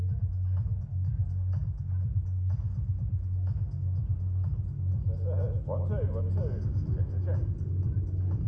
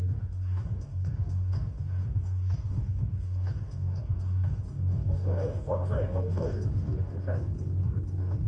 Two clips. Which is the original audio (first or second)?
first